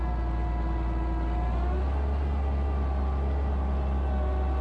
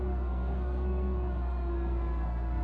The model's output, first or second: second